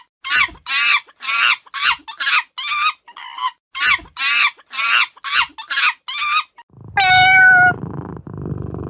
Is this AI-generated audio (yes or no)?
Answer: no